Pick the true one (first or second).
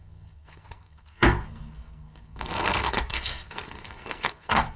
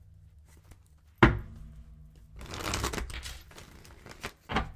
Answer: second